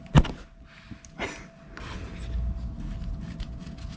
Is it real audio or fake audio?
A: real